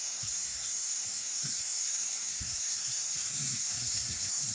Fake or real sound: fake